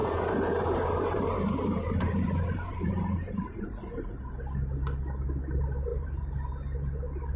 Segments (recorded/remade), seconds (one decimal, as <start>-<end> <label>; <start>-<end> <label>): 0.0-4.1 remade; 4.1-5.9 recorded; 5.9-6.5 remade; 6.5-7.4 recorded